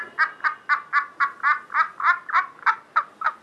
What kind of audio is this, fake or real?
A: real